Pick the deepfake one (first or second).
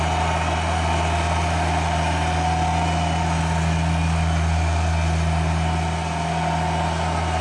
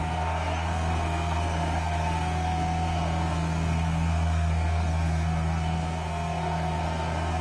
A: second